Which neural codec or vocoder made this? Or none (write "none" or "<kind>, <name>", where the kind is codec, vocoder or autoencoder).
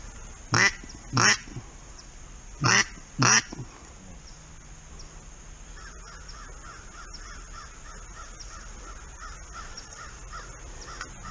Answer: none